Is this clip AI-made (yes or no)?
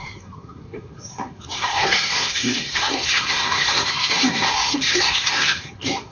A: yes